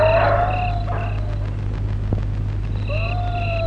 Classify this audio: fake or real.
real